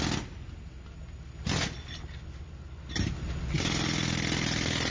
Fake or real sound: real